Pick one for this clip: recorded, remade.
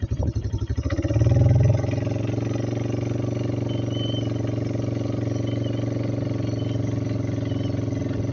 recorded